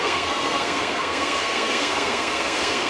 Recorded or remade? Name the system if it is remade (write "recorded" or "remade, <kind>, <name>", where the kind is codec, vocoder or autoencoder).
remade, codec, SNAC